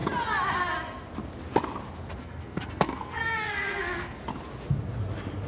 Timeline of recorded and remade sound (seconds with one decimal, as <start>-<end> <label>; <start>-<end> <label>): 0.0-2.2 recorded; 2.2-4.2 remade; 4.2-5.5 recorded